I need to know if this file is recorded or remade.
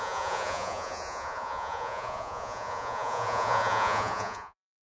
remade